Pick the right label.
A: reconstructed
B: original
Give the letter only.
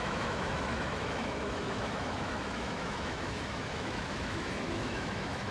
A